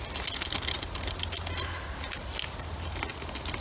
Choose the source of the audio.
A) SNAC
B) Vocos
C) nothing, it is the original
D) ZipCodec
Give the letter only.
C